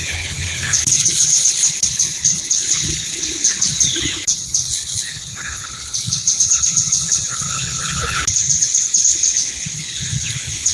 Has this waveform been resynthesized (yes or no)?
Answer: yes